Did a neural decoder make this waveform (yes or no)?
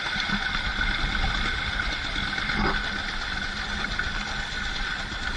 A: no